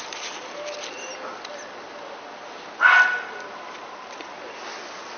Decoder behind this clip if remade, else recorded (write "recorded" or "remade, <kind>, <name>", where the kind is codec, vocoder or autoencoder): recorded